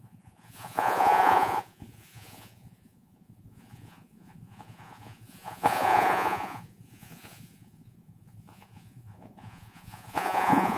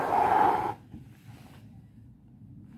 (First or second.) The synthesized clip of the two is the first